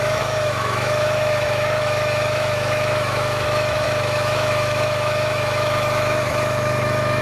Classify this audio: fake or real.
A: fake